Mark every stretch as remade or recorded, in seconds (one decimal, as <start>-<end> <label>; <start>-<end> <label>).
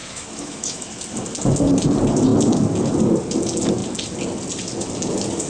0.0-0.9 remade; 0.9-5.5 recorded